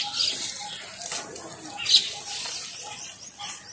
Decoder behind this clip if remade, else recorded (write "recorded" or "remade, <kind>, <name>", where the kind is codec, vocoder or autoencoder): recorded